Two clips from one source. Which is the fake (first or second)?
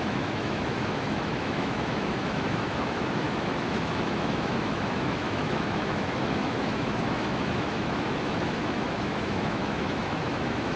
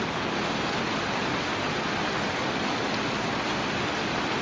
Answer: first